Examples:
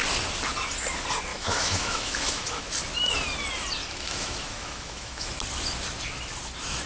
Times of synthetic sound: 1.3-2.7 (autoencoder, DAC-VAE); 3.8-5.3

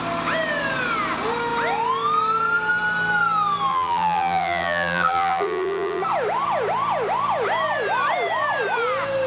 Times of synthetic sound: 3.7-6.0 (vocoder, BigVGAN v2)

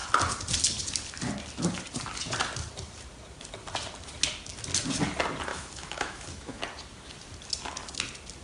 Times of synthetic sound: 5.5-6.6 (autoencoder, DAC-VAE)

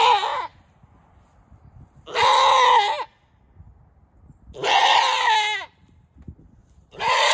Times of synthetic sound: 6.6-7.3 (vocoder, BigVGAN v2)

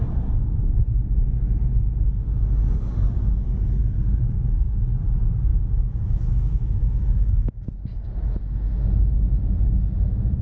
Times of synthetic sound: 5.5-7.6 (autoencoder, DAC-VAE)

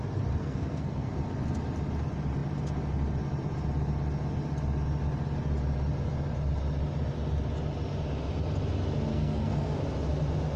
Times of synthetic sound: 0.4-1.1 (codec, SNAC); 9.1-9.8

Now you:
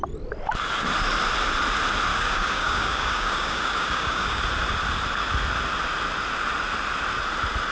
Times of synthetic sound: 2.1-4.4 (codec, DAC)

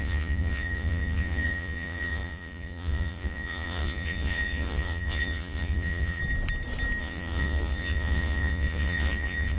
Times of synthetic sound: 0.0-6.2 (vocoder, Vocos); 7.0-9.6